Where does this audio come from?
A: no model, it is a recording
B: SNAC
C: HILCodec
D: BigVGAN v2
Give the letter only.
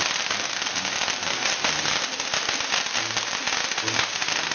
A